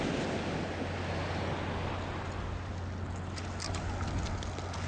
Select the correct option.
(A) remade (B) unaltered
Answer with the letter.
B